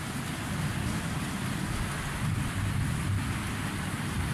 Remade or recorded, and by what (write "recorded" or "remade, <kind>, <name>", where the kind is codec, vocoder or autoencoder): recorded